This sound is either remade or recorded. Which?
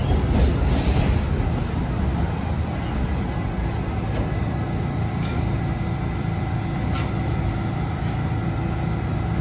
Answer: recorded